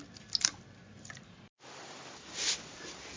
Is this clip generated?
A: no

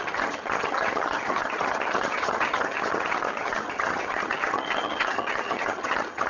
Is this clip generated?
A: yes